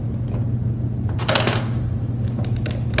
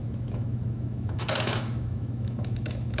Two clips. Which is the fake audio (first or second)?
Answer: second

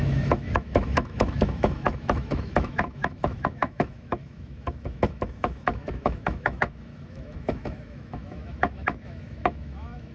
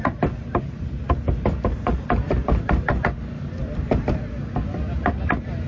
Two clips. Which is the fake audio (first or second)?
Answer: first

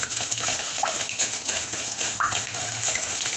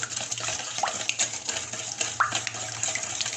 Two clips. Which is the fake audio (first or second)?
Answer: first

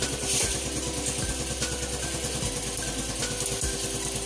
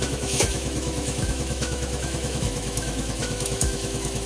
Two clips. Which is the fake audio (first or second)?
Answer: second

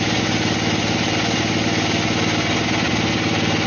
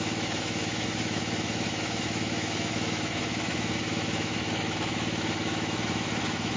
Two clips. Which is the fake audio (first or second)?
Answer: second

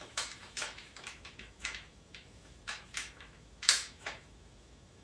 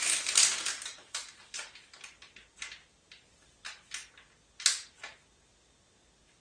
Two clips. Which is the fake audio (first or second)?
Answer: first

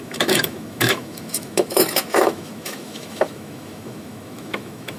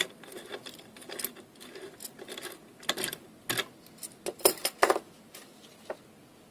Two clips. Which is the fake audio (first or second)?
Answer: first